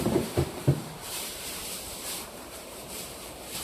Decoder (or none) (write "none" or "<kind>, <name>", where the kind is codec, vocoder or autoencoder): vocoder, BigVGAN v2